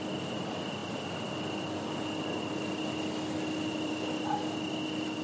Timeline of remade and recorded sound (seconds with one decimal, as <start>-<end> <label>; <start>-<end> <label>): 0.0-5.2 recorded

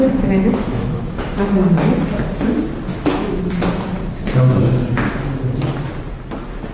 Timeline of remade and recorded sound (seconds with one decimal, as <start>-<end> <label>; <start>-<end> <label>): 0.0-1.2 remade; 1.2-2.9 recorded; 2.9-3.4 remade; 3.4-6.7 recorded

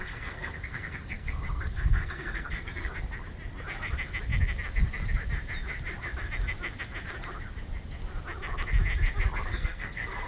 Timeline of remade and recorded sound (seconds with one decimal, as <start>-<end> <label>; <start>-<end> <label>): 0.0-2.9 remade; 2.9-9.5 recorded; 9.5-10.3 remade

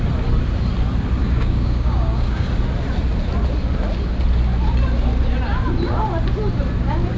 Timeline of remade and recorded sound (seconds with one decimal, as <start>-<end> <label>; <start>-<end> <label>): 0.0-1.2 recorded; 1.2-2.5 remade; 2.5-7.2 recorded

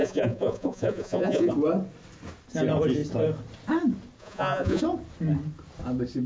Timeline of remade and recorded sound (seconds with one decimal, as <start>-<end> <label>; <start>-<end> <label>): 0.0-1.5 remade; 1.5-4.2 recorded; 4.2-4.8 remade; 4.8-6.3 recorded

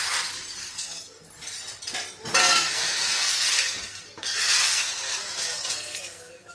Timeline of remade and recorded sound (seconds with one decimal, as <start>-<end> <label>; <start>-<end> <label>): 0.0-0.6 recorded; 0.6-1.3 remade; 1.3-2.4 recorded; 2.4-6.5 remade

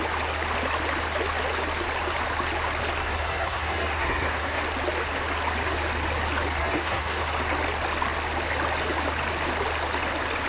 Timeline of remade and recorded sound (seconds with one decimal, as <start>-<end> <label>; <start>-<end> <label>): 0.0-3.0 recorded; 3.0-4.6 remade; 4.6-6.6 recorded; 6.6-7.2 remade; 7.2-10.5 recorded